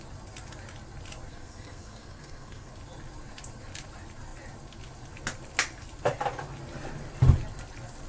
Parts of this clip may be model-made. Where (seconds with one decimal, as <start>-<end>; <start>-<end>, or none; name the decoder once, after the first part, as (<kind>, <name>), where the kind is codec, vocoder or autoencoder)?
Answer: 1.3-2.7 (codec, SNAC)